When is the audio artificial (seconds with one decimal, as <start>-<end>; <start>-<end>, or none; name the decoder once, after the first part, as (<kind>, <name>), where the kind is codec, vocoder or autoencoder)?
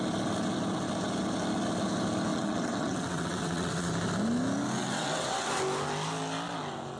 2.3-3.9 (vocoder, WaveNeXt); 4.8-5.6